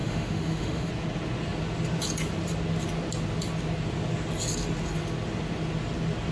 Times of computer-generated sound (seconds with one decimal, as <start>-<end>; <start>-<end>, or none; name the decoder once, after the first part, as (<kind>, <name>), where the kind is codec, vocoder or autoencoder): 0.0-0.9 (autoencoder, DAC-VAE)